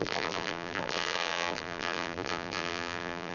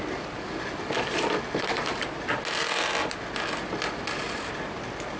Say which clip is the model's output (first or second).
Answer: first